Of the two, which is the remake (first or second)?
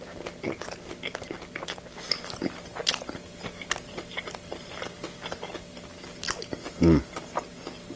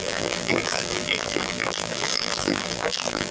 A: second